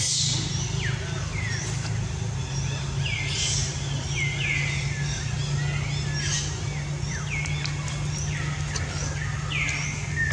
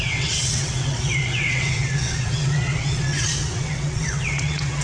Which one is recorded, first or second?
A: first